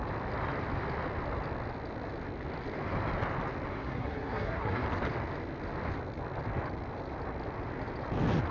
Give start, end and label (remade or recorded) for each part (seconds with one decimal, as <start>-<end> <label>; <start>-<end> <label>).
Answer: 0.0-3.7 recorded; 3.7-4.8 remade; 4.8-8.5 recorded